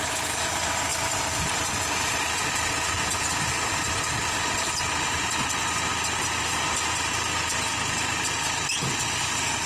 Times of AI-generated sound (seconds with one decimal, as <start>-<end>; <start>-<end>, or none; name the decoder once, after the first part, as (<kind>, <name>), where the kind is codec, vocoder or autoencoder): 0.9-1.8 (vocoder, BigVGAN v2)